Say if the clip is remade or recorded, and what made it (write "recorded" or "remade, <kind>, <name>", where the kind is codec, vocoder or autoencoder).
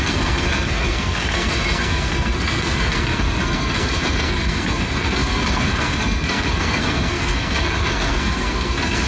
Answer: remade, codec, SNAC